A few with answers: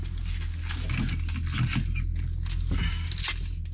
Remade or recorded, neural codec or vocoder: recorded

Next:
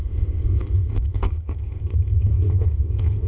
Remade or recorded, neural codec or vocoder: remade, codec, ZipCodec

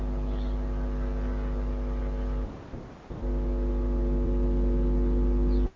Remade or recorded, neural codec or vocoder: recorded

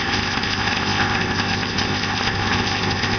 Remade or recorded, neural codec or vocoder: remade, codec, ZipCodec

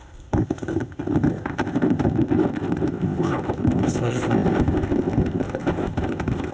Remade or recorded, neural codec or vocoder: remade, codec, ZipCodec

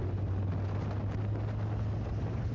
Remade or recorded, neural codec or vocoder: recorded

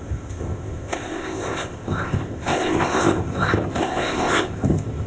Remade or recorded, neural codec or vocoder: remade, codec, ZipCodec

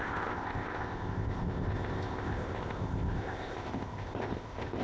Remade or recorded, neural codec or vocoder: remade, codec, ZipCodec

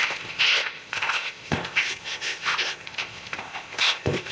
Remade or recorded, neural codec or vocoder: remade, codec, ZipCodec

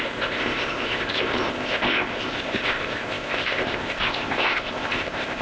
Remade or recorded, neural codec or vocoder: remade, codec, ZipCodec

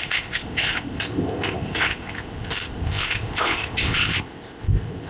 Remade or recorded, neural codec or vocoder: remade, codec, ZipCodec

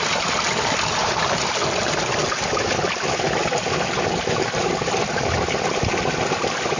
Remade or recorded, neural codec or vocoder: recorded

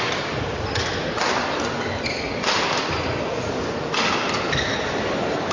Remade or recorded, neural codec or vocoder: recorded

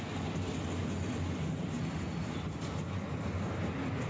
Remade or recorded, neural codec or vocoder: recorded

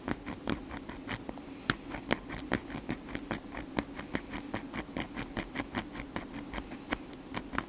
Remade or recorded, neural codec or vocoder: recorded